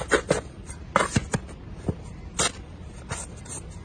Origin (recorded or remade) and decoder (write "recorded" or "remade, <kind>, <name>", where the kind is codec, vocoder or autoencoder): recorded